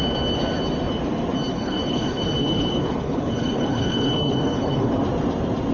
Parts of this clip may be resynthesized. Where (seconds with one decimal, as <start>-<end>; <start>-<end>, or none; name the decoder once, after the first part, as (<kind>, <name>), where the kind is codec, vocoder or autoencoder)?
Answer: 1.5-4.9 (codec, HILCodec)